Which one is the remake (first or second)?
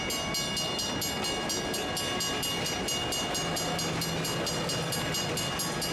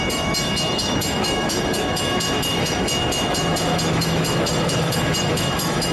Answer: second